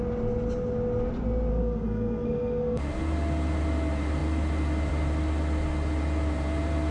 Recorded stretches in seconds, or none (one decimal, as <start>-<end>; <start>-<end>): 0.0-1.5; 2.8-6.9